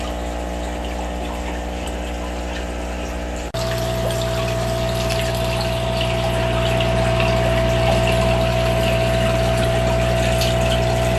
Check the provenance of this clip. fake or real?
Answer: real